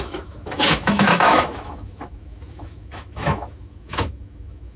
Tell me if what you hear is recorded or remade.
remade